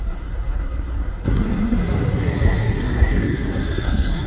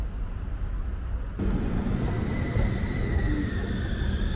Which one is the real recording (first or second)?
second